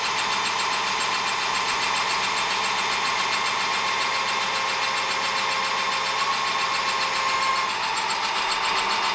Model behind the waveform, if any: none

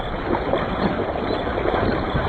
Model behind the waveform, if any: vocoder, BigVGAN v2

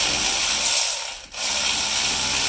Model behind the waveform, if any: none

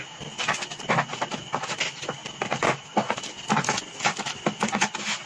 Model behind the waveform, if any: none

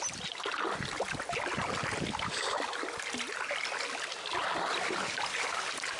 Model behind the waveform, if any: none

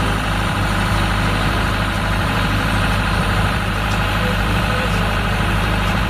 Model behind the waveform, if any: vocoder, BigVGAN v2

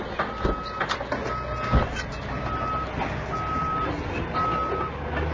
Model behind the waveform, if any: none